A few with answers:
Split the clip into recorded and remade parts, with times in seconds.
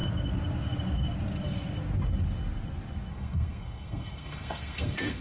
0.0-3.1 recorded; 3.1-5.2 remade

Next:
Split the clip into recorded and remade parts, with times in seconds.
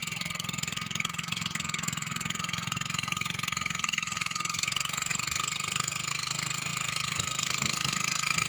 0.0-8.5 remade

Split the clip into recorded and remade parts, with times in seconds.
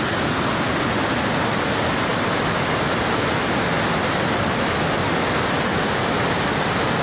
0.0-7.0 recorded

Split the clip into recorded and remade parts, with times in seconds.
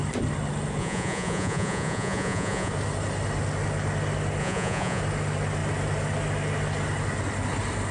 0.0-0.8 recorded; 0.8-2.7 remade; 2.7-4.4 recorded; 4.4-5.0 remade; 5.0-7.9 recorded